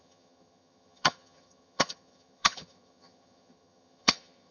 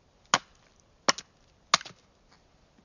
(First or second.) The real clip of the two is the second